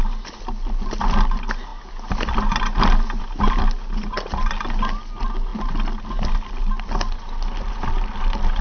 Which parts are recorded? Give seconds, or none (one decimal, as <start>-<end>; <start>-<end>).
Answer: 0.0-8.6